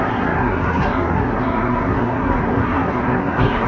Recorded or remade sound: remade